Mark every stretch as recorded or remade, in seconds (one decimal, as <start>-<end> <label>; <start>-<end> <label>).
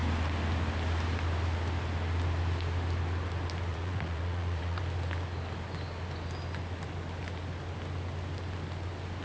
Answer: 0.0-3.7 recorded; 3.7-4.8 remade; 4.8-9.2 recorded